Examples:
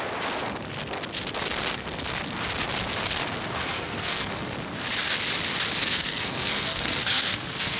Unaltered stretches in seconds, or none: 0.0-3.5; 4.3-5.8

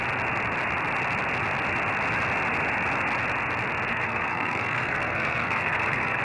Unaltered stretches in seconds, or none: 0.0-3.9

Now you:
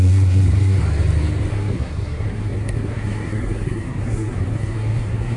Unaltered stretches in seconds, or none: 0.8-1.5

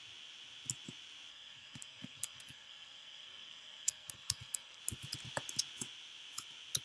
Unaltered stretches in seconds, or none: 0.0-1.3; 4.8-6.8

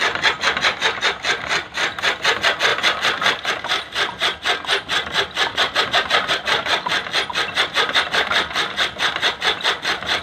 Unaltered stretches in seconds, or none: 0.0-10.2

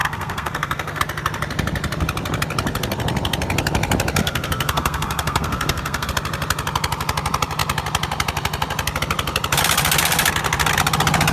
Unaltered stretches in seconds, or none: 1.0-4.2; 6.1-11.3

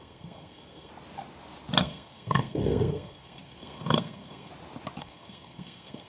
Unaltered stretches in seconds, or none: 0.9-1.8; 4.5-5.0